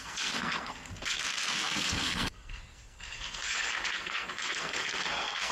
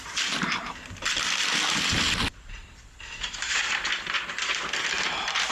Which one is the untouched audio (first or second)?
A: second